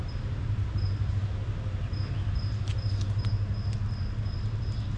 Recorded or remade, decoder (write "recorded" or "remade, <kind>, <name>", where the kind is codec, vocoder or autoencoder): recorded